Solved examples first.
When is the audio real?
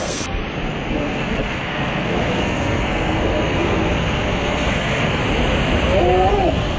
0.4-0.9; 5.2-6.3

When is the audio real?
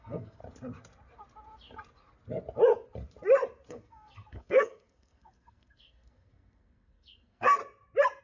0.4-3.7; 7.6-8.2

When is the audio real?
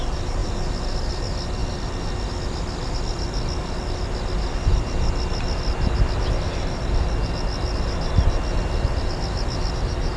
0.0-10.2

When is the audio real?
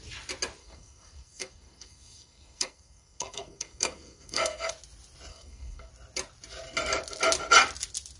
0.0-0.6; 4.7-5.3; 5.9-8.2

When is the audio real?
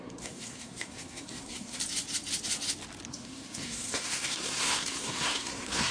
1.8-3.1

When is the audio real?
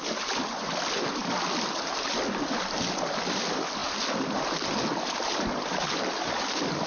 0.0-6.9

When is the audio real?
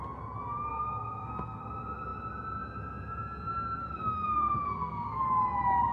0.0-0.7; 1.6-3.8; 5.2-5.9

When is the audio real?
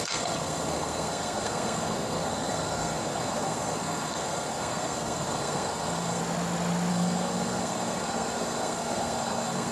6.2-6.9